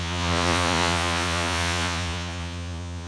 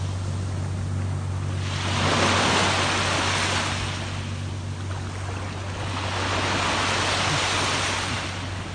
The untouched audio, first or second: second